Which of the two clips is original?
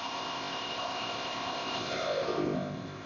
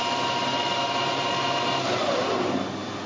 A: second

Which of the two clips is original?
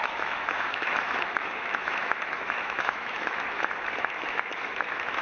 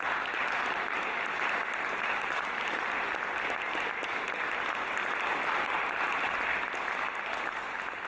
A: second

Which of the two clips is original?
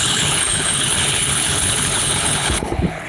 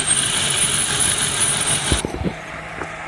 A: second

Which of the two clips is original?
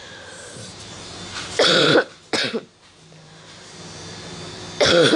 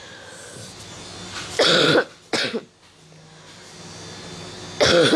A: second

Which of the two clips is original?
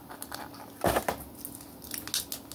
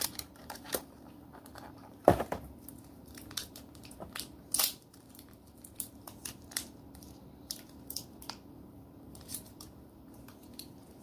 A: first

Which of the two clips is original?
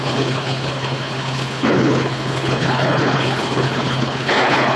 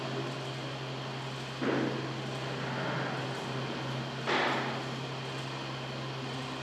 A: second